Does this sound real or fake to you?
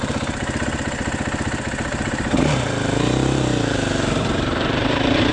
fake